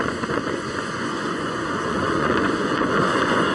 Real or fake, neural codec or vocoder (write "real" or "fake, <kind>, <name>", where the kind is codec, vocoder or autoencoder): fake, vocoder, Vocos